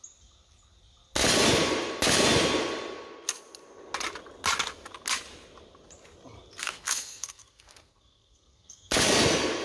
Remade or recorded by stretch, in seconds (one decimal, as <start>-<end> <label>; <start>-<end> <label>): 0.0-6.6 recorded; 6.6-8.9 remade; 8.9-9.6 recorded